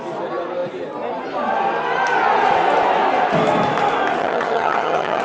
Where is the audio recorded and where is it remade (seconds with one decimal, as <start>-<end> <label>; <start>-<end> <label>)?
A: 0.0-4.2 recorded; 4.2-5.2 remade

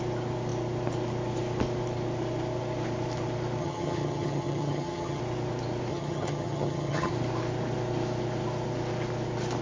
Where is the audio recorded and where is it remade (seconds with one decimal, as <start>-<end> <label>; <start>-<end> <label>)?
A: 0.0-3.6 recorded; 3.6-5.2 remade; 5.2-5.9 recorded; 5.9-7.1 remade; 7.1-9.6 recorded

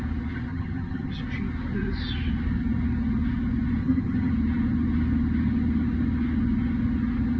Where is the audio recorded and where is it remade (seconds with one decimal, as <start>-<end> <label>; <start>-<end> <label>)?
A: 0.0-0.5 recorded; 0.5-1.2 remade; 1.2-3.8 recorded; 3.8-4.3 remade; 4.3-7.4 recorded

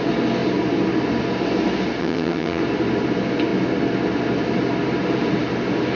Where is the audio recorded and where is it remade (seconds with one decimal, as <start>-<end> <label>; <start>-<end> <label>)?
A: 0.0-2.0 recorded; 2.0-2.6 remade; 2.6-5.9 recorded

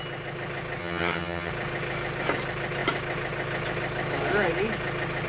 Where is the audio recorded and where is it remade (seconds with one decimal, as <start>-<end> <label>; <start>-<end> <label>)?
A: 0.0-0.8 recorded; 0.8-1.5 remade; 1.5-5.3 recorded

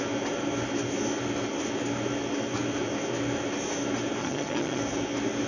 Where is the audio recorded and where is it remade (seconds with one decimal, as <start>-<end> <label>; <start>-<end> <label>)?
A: 0.0-4.2 recorded; 4.2-4.8 remade; 4.8-5.5 recorded